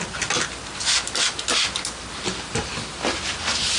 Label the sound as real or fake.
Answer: real